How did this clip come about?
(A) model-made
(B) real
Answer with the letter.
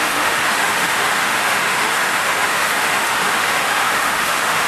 A